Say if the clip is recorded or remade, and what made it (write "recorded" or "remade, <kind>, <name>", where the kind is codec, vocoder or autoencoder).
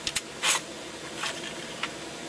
remade, vocoder, BigVGAN v2